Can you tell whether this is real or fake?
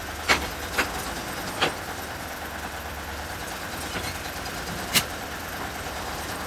fake